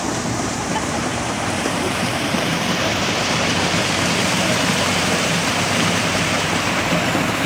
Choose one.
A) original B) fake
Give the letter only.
B